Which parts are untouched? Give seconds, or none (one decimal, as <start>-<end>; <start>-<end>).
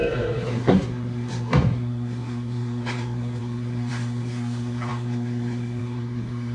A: none